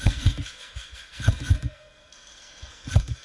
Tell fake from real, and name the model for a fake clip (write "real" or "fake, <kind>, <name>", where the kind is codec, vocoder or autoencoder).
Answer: fake, codec, SNAC